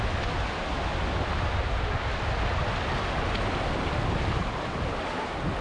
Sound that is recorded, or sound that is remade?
recorded